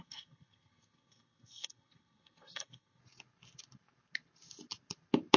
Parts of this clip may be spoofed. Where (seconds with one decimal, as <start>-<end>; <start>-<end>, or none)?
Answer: 0.0-3.0